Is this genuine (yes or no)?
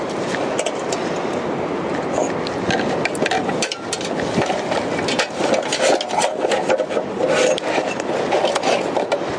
yes